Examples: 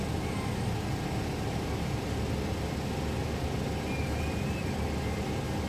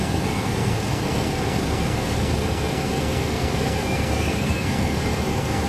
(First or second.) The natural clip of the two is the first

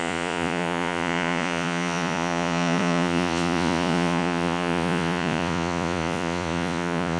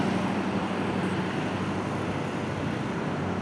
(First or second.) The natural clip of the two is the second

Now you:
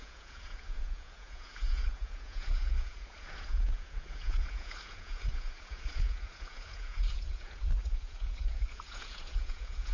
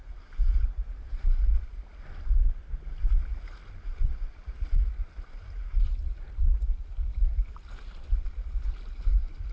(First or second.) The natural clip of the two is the second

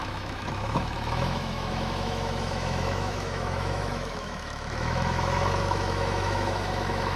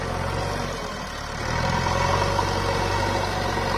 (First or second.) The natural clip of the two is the second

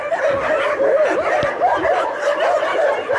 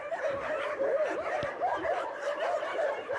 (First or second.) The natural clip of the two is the first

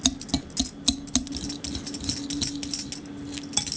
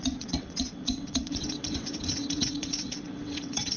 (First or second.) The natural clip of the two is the first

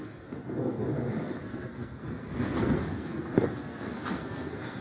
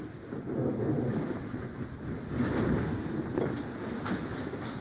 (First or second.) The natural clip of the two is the second